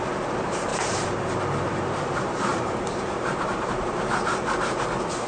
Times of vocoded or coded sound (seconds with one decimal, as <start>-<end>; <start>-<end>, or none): 0.7-1.3; 2.5-4.1